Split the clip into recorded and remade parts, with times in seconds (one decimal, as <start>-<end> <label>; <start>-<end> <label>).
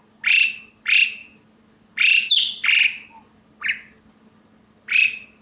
0.0-5.4 recorded